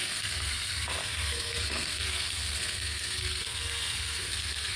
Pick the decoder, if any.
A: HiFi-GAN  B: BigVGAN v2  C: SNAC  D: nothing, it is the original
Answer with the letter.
C